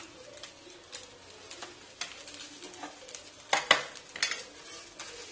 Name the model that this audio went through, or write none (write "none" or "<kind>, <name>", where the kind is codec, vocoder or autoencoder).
none